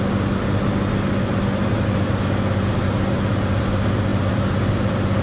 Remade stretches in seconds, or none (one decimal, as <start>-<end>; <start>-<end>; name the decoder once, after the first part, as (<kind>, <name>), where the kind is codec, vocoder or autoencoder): none